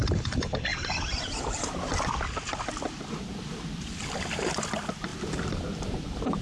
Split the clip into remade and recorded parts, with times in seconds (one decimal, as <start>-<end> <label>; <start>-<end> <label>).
0.0-5.1 recorded; 5.1-6.4 remade